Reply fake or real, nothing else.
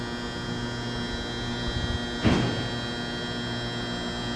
real